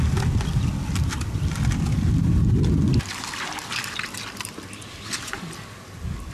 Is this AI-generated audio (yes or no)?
no